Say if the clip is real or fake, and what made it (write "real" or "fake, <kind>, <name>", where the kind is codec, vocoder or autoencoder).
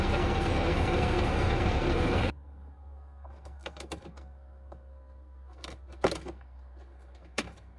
fake, codec, SNAC